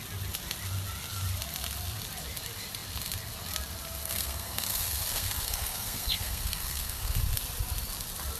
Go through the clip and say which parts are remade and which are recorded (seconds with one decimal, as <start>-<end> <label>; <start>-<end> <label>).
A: 0.0-4.0 recorded; 4.0-7.2 remade; 7.2-8.4 recorded